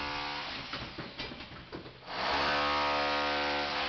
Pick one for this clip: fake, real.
real